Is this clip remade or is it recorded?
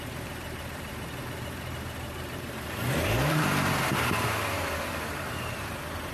remade